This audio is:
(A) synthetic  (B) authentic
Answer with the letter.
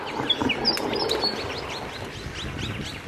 B